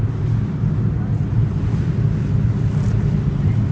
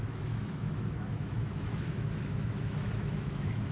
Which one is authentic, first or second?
first